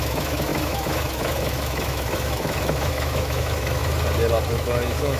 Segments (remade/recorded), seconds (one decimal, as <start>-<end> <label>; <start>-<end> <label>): 0.0-3.8 remade; 3.8-4.5 recorded; 4.5-5.2 remade